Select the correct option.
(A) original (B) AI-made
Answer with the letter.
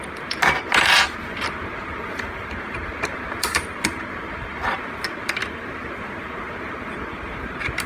B